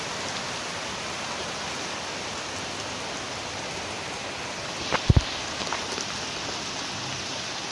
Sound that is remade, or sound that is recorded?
recorded